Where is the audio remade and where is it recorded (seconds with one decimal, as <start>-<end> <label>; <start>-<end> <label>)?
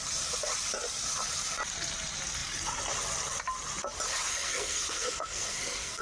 0.0-4.3 recorded; 4.3-6.0 remade